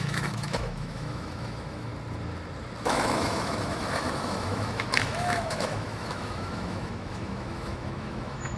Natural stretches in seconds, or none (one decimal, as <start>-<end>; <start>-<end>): 1.9-2.8

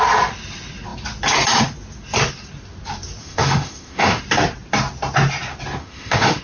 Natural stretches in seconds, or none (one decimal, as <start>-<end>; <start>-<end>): 0.0-3.2; 4.2-5.8

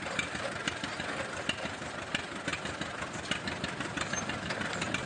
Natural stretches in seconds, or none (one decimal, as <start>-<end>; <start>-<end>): 0.0-5.1

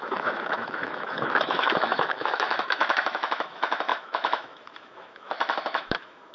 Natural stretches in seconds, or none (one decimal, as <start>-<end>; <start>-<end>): none

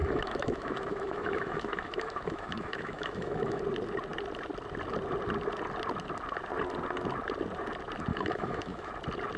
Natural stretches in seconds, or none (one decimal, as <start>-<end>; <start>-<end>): 3.6-8.1; 8.9-9.4

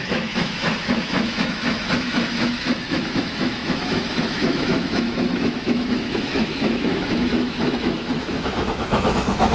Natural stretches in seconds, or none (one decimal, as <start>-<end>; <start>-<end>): none

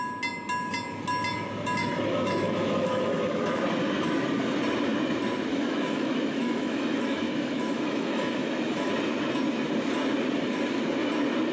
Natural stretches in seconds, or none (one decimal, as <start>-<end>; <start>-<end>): 0.0-1.8; 3.6-5.5; 8.9-11.5